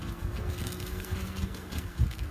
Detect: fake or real fake